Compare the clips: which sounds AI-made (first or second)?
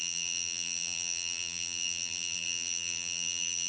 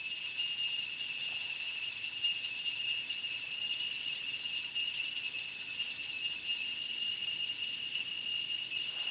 first